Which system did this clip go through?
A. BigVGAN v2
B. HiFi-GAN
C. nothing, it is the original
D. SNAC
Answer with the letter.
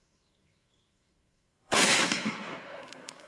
D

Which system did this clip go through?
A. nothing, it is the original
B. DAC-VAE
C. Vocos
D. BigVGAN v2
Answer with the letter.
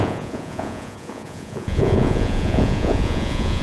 C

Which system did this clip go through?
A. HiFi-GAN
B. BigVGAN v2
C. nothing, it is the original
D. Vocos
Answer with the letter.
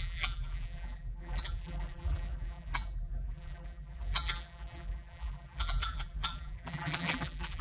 B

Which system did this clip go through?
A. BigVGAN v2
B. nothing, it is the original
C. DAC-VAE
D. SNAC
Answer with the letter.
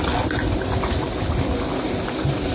B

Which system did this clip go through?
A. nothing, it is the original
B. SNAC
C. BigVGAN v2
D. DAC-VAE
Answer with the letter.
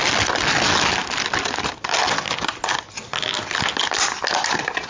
A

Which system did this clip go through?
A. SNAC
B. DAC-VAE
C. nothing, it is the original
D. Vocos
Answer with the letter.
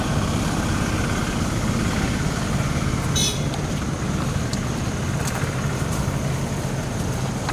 C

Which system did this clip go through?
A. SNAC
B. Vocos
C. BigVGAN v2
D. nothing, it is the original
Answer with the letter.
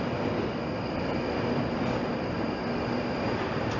C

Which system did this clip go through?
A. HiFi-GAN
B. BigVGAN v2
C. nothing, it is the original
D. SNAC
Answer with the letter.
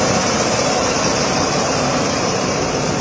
B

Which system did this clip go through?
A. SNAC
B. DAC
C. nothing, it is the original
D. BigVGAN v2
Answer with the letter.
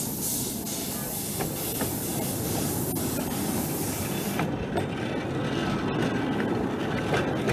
C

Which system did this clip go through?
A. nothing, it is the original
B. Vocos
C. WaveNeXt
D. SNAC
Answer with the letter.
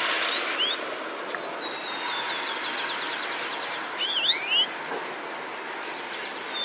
A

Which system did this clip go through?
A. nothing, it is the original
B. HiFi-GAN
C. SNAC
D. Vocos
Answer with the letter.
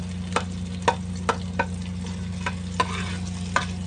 A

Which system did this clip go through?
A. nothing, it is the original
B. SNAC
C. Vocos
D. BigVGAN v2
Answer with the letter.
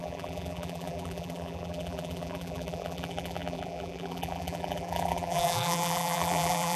D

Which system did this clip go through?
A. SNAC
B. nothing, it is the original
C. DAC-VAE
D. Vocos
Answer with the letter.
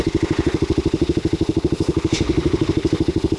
C